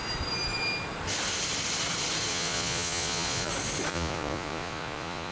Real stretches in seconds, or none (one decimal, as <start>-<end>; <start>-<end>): 0.0-2.3; 3.5-3.9